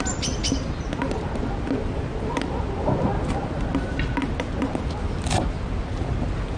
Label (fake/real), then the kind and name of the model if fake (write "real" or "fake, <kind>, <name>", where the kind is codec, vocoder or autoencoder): real